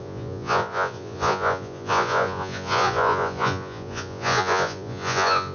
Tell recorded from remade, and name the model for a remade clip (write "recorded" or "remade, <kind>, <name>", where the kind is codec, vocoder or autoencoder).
remade, vocoder, Vocos